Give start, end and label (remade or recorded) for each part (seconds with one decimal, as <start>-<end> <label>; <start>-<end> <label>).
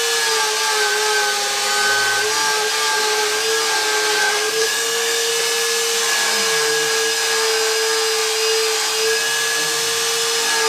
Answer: 0.0-4.2 recorded; 4.2-5.3 remade; 5.3-10.7 recorded